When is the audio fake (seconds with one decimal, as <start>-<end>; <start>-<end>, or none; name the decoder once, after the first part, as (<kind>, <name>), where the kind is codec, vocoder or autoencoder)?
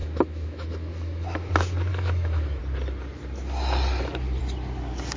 0.0-1.5 (autoencoder, DAC-VAE); 1.9-2.6